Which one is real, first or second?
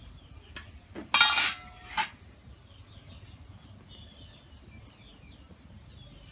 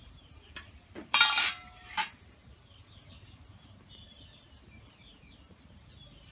first